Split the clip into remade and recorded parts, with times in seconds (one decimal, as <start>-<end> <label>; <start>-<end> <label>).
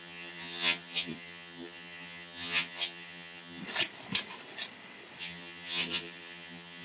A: 0.0-3.6 remade; 3.6-5.2 recorded; 5.2-6.8 remade